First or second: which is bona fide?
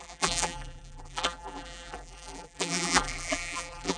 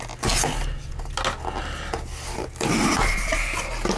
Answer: second